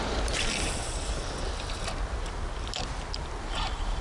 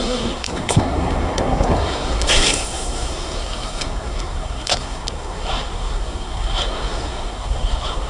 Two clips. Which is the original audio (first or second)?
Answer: first